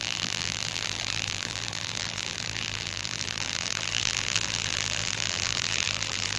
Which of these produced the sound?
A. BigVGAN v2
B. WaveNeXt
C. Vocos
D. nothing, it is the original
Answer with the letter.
A